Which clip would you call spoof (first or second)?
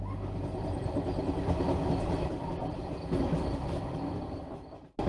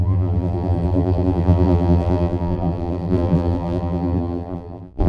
second